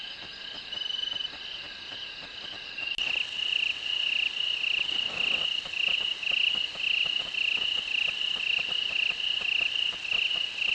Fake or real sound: real